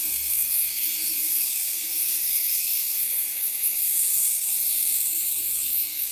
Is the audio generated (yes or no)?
yes